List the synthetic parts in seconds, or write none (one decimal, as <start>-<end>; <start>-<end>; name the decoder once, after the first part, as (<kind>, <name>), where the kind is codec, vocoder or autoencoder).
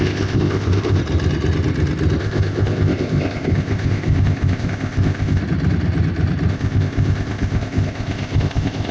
0.0-1.0 (codec, ZipCodec); 2.2-5.4; 6.5-8.9